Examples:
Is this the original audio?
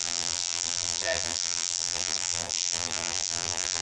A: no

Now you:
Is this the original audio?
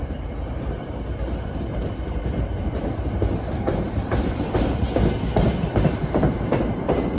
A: no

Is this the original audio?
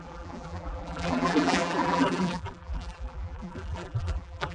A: no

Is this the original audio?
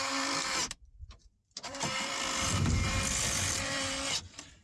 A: no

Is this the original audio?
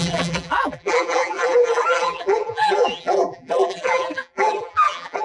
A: no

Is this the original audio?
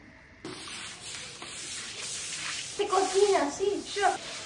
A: no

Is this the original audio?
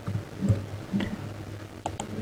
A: yes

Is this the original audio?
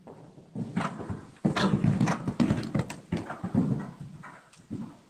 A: yes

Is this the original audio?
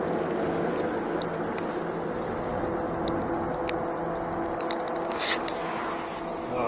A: yes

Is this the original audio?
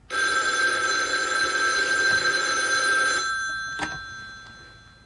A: yes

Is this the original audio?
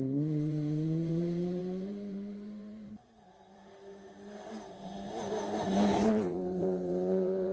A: no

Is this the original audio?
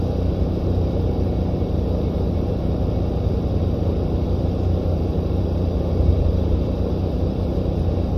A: no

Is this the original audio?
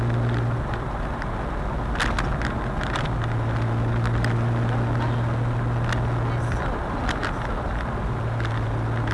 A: yes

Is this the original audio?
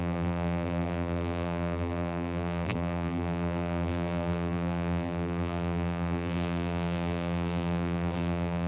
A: no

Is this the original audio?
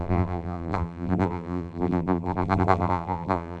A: no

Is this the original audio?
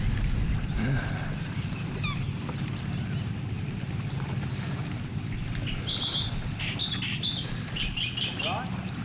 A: yes